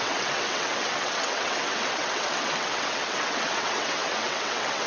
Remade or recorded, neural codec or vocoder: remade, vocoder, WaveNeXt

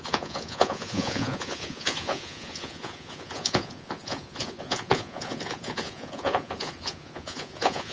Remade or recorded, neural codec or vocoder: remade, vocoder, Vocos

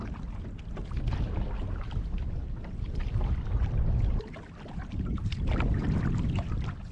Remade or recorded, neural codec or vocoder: recorded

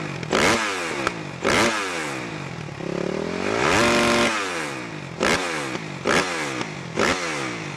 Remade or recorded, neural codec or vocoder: recorded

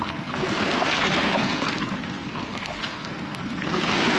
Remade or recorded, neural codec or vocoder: remade, codec, SNAC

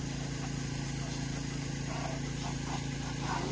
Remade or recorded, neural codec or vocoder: recorded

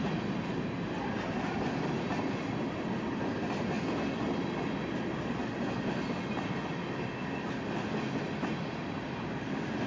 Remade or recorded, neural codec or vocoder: recorded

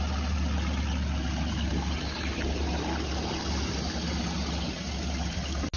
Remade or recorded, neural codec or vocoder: recorded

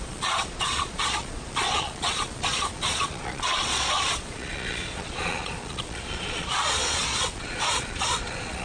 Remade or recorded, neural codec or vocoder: remade, vocoder, Vocos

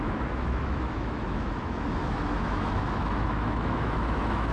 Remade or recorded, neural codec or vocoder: remade, autoencoder, DAC-VAE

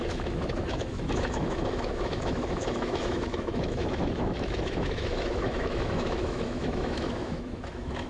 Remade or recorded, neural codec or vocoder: remade, autoencoder, DAC-VAE